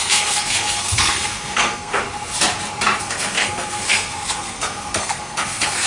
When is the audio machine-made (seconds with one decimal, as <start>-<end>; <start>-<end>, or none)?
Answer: 0.0-2.0; 3.0-5.9